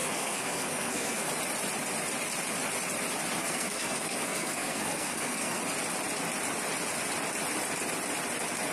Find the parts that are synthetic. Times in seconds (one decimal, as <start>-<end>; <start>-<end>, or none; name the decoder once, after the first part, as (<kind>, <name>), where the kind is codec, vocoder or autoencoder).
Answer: 0.0-1.3 (codec, SNAC); 3.4-5.6